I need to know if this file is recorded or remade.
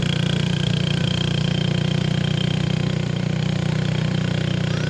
recorded